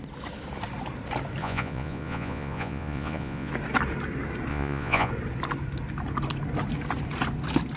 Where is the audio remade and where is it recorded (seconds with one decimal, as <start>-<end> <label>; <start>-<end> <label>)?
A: 0.0-1.4 recorded; 1.4-3.5 remade; 3.5-4.5 recorded; 4.5-5.1 remade; 5.1-7.8 recorded

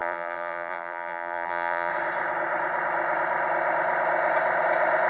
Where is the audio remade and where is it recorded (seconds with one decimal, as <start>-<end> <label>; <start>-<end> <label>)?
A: 0.0-1.9 remade; 1.9-5.1 recorded

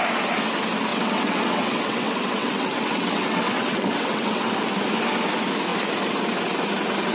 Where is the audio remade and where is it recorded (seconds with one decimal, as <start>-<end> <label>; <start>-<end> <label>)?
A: 0.0-0.9 recorded; 0.9-4.5 remade; 4.5-7.1 recorded

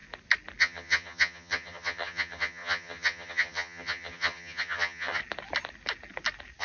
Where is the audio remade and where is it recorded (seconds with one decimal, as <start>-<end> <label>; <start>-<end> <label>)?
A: 0.0-0.6 recorded; 0.6-5.2 remade; 5.2-6.6 recorded

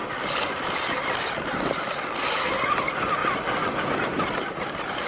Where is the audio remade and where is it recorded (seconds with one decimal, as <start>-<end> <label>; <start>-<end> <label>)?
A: 0.0-0.8 remade; 0.8-3.2 recorded; 3.2-3.9 remade; 3.9-5.1 recorded

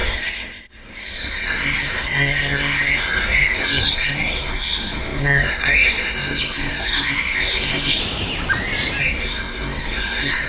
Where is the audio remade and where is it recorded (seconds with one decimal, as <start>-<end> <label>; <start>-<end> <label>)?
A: 0.0-8.0 remade; 8.0-9.0 recorded; 9.0-10.5 remade